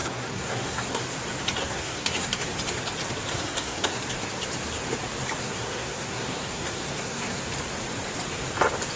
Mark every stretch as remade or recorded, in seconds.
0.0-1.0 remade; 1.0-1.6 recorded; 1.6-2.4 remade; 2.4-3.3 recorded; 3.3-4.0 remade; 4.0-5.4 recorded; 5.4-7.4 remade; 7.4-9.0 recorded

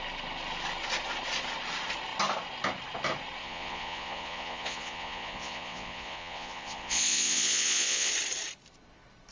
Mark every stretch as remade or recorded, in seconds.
0.0-3.4 recorded; 3.4-8.1 remade; 8.1-9.3 recorded

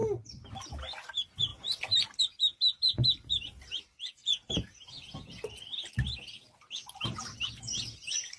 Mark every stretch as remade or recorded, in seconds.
0.0-4.2 recorded; 4.2-5.4 remade; 5.4-8.4 recorded

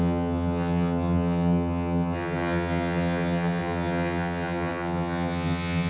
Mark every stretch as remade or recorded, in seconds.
0.0-5.9 remade

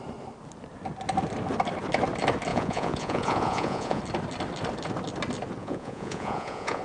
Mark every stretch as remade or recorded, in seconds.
0.0-2.5 recorded; 2.5-4.0 remade; 4.0-5.6 recorded; 5.6-6.8 remade

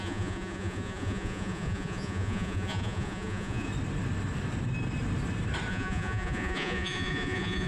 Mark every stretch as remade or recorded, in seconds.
0.0-3.7 remade; 3.7-5.7 recorded; 5.7-7.7 remade

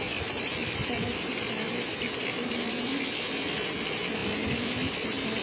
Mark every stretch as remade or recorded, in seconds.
0.0-1.9 recorded; 1.9-2.8 remade; 2.8-4.2 recorded; 4.2-4.9 remade; 4.9-5.4 recorded

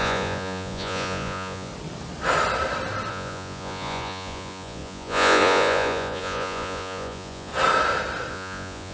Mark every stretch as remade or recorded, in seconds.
0.0-1.7 remade; 1.7-3.1 recorded; 3.1-7.5 remade; 7.5-8.3 recorded; 8.3-8.9 remade